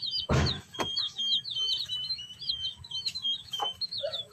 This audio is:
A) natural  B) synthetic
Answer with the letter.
B